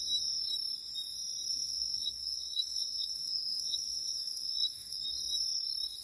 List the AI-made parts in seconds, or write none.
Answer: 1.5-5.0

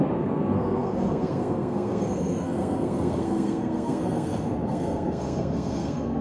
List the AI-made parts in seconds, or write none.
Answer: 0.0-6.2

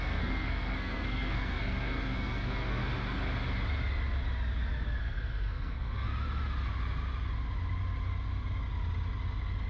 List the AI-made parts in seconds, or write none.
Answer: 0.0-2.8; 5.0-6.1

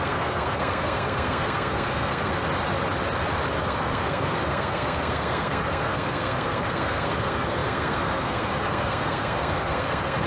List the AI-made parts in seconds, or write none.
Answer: 0.0-2.3; 3.6-10.3

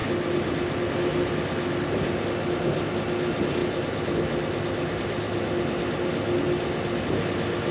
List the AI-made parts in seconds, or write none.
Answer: none